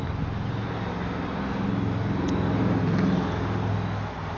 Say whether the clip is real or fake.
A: real